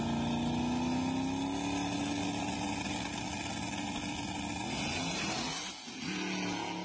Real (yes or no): yes